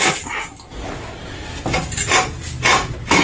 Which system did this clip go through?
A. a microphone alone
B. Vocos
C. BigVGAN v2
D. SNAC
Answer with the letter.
A